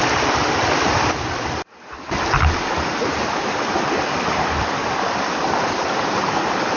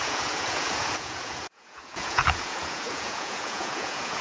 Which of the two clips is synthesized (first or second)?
second